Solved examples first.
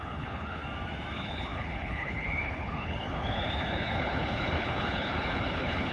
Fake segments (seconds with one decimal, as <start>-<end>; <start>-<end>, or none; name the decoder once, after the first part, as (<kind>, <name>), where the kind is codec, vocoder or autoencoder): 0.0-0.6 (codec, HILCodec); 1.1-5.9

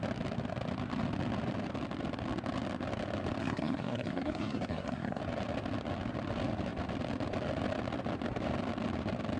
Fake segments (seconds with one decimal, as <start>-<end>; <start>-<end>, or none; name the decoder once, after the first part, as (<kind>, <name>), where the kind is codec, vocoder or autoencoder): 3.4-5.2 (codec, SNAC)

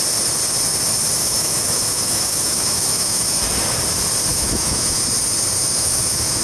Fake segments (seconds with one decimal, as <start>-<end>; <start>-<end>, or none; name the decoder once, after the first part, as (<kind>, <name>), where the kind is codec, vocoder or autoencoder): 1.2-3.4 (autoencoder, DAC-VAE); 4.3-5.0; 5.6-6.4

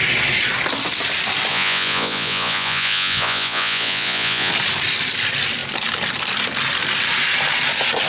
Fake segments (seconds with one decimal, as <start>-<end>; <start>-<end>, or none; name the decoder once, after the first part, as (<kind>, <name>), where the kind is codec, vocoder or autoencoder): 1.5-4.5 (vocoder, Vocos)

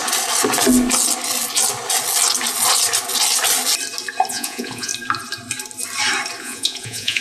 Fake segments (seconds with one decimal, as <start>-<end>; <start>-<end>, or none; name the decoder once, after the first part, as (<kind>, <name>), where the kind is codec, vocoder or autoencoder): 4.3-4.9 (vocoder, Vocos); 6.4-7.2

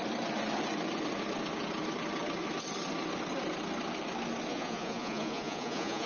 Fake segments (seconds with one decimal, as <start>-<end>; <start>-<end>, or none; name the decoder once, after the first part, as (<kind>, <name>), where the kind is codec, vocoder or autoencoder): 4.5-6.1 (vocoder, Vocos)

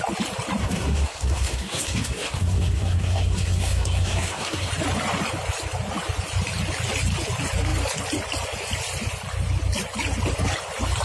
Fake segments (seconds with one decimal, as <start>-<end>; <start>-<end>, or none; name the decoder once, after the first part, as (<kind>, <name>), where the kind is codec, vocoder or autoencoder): 0.6-4.7 (codec, SNAC)